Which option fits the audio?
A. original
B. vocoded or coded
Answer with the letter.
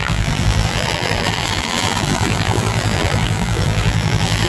B